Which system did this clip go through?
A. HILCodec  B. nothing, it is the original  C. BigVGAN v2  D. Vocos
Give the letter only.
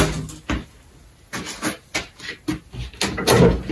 B